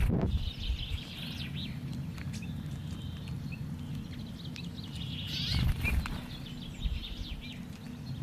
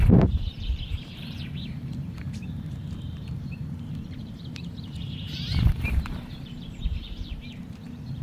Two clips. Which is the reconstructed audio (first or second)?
second